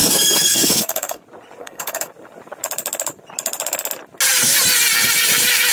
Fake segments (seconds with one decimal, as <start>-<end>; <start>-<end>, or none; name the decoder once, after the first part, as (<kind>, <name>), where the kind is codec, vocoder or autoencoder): 0.0-1.2 (codec, SNAC); 1.6-2.1